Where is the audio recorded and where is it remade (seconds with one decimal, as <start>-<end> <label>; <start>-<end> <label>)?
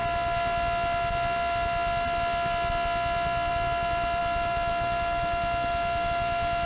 0.0-6.7 recorded